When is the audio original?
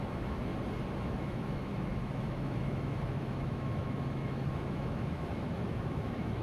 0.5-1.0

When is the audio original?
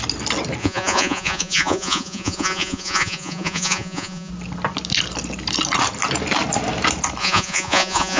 0.0-0.6; 4.3-7.2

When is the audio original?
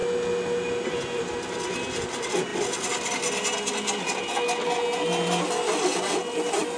0.0-6.8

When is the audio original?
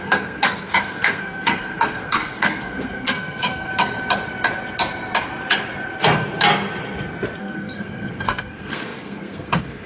3.7-7.4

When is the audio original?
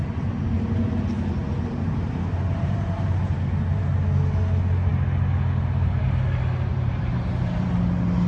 0.9-1.4; 3.8-6.7; 7.7-8.3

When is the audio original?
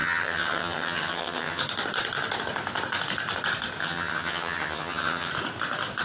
1.6-3.8; 5.3-6.0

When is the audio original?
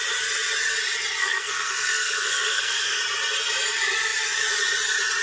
0.0-1.2; 3.0-5.2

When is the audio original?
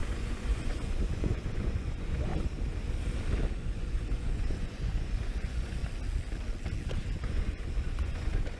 2.3-3.5; 5.8-7.2